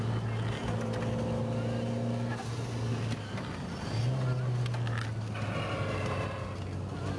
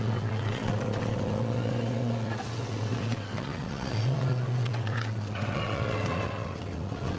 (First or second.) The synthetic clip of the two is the second